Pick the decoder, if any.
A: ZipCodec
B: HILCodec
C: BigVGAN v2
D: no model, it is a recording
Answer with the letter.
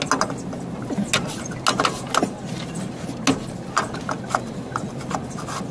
D